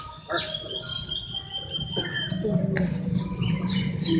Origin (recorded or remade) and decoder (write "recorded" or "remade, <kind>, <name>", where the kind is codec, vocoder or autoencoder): recorded